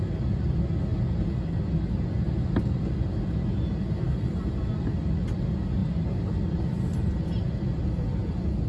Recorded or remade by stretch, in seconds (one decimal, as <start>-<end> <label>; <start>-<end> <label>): 0.0-8.7 recorded